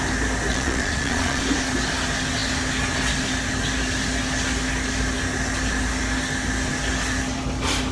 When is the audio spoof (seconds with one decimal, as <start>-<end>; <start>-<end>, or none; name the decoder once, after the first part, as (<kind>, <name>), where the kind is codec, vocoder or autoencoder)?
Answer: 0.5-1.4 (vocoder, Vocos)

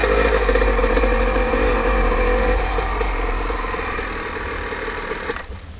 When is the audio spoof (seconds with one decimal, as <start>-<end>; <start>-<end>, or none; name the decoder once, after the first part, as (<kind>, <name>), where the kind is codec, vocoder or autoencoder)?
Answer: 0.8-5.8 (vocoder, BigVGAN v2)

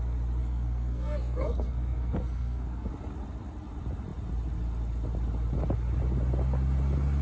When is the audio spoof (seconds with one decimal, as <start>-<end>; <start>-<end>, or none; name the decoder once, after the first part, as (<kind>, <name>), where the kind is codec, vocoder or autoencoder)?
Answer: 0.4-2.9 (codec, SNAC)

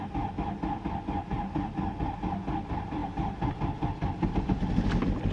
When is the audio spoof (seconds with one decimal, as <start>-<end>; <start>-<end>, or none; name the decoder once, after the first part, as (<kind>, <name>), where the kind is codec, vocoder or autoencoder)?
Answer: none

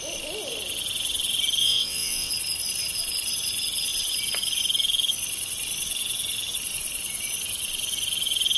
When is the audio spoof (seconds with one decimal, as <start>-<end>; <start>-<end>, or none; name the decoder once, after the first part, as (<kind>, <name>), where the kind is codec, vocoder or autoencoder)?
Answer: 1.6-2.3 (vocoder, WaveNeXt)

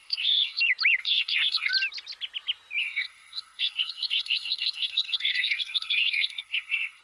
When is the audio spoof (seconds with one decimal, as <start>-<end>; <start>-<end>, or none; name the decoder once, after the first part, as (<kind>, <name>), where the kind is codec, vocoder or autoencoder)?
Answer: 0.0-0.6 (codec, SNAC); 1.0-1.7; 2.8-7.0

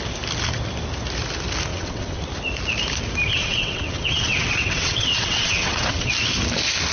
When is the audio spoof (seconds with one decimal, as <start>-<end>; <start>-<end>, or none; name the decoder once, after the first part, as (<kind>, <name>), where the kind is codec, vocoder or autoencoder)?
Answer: 1.7-2.2 (vocoder, WaveNeXt); 3.4-6.1